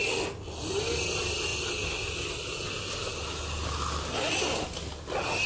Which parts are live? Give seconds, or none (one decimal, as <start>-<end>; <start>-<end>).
0.0-5.5